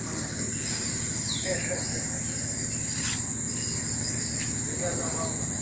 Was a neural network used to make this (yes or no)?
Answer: no